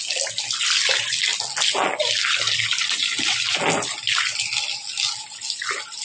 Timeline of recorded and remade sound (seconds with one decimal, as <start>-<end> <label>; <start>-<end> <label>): 0.0-6.0 recorded